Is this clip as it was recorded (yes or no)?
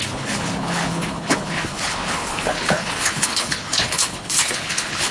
no